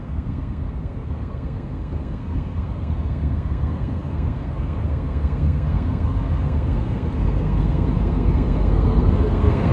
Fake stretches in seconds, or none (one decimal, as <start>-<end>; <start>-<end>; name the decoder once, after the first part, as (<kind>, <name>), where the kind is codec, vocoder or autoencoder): 0.0-9.7 (codec, SNAC)